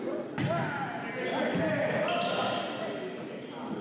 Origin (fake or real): real